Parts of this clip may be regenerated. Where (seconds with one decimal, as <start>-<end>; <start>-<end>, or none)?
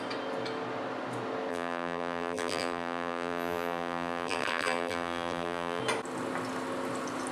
1.5-5.8